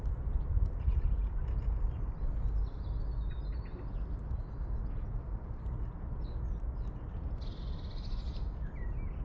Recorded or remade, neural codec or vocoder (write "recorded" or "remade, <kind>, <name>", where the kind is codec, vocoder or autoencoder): recorded